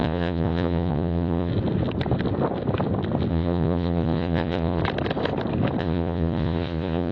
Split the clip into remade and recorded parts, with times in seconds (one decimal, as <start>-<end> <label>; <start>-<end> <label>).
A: 0.0-1.5 remade; 1.5-3.3 recorded; 3.3-4.8 remade; 4.8-5.8 recorded; 5.8-7.1 remade